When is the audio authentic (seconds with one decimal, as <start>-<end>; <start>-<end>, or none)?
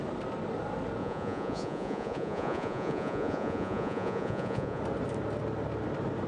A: 0.0-1.0; 4.8-6.3